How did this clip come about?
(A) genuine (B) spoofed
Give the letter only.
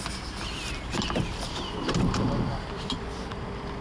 A